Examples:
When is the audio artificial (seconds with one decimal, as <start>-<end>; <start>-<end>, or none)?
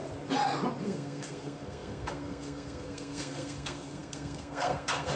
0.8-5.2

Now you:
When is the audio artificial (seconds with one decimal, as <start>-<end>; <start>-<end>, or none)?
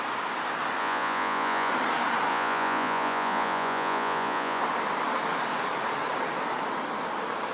0.8-1.7; 2.3-4.6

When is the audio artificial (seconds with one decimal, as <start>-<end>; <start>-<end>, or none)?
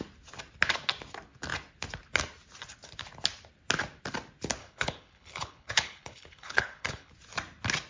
4.6-7.1